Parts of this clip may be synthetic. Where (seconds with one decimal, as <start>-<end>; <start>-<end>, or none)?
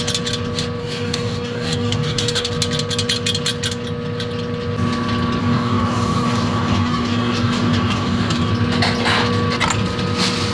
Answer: 0.8-2.5; 5.4-8.5